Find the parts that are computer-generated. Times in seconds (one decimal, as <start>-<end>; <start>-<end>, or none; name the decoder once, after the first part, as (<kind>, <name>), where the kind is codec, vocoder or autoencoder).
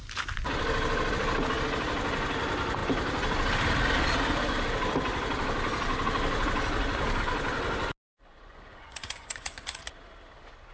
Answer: 8.1-9.8 (vocoder, Vocos)